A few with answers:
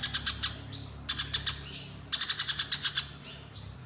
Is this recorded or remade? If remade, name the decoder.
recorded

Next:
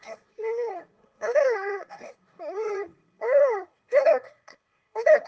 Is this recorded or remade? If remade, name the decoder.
remade, codec, SNAC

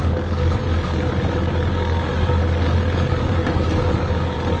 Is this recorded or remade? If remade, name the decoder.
remade, codec, DAC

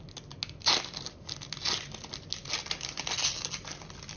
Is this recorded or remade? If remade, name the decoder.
recorded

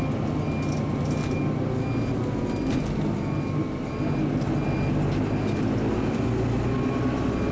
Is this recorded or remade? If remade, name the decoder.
recorded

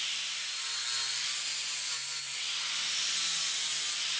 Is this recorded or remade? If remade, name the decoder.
recorded